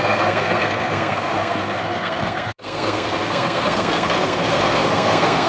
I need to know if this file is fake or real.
fake